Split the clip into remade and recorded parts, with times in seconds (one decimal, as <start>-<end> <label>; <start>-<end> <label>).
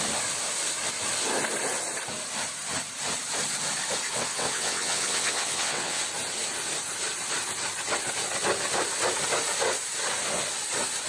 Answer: 0.0-4.1 recorded; 4.1-6.0 remade; 6.0-11.1 recorded